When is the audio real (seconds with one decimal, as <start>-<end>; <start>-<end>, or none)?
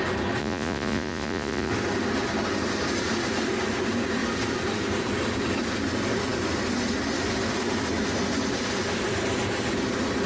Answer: 0.0-0.4; 1.7-10.3